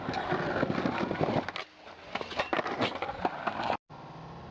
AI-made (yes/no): no